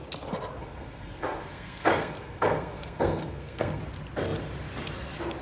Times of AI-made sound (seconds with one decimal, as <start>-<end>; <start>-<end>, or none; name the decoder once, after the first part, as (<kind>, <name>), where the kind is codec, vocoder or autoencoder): 0.6-3.8 (codec, SNAC)